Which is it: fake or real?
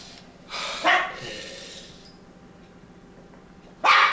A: real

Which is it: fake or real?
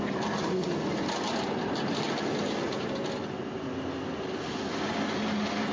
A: real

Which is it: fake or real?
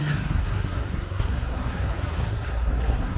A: fake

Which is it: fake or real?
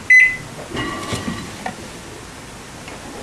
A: real